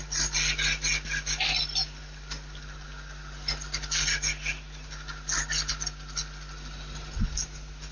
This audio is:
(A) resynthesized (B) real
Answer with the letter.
B